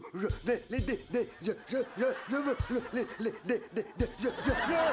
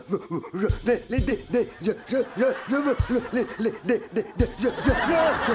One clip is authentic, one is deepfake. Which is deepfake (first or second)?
second